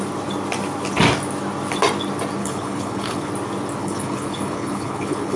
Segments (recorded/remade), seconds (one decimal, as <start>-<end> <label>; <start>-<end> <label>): 0.0-2.4 recorded; 2.4-3.3 remade; 3.3-3.8 recorded; 3.8-5.4 remade